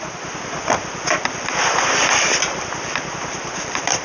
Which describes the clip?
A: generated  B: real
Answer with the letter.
B